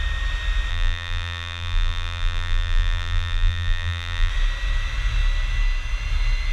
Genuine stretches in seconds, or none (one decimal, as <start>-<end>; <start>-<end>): 0.0-0.7; 4.3-6.5